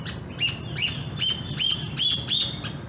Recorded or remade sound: recorded